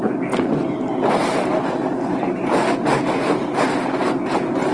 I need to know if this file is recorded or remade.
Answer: recorded